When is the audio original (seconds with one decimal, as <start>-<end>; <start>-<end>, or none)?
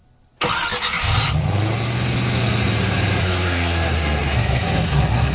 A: 0.0-3.2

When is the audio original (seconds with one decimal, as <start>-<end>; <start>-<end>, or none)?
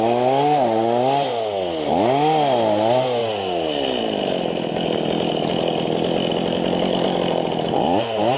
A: 0.0-8.4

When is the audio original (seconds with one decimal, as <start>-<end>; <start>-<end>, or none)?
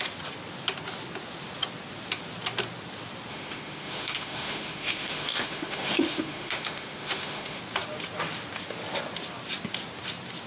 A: 0.0-3.3; 7.6-10.5